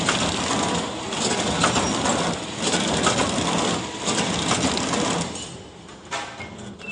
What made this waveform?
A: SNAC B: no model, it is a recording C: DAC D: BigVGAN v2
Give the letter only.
B